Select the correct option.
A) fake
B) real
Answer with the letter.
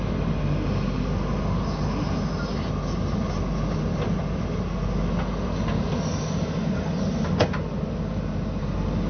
B